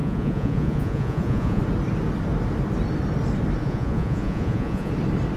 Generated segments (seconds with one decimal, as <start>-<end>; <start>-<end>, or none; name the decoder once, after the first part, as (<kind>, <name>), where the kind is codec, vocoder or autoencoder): 0.0-1.6 (vocoder, Vocos); 3.6-4.9

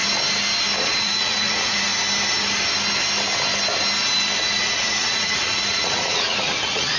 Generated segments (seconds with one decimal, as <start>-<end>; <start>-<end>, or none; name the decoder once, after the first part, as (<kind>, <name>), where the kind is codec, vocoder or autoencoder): 0.8-1.9 (vocoder, Vocos); 4.4-7.0

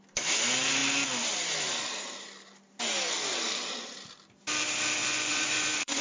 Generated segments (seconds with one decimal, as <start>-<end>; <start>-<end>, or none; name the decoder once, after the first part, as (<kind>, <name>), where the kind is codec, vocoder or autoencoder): 5.0-6.0 (vocoder, Vocos)

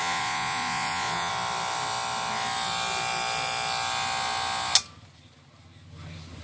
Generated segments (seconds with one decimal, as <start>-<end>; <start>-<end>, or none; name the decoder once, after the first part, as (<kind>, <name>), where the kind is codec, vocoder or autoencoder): 0.0-1.3 (vocoder, Vocos)

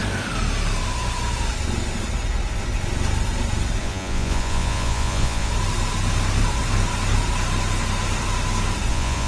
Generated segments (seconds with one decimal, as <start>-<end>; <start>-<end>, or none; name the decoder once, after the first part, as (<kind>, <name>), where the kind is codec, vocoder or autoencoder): 3.8-5.5 (vocoder, Vocos); 8.9-9.3

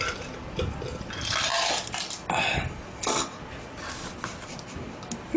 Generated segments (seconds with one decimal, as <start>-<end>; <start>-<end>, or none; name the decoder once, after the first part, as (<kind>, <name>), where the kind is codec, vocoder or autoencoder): none

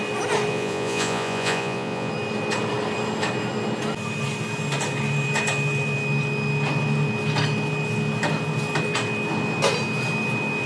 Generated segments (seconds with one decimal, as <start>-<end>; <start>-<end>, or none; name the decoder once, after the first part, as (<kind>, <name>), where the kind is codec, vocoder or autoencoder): 0.5-2.1 (vocoder, Vocos)